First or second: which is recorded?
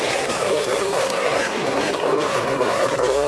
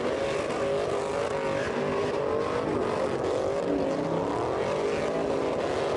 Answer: second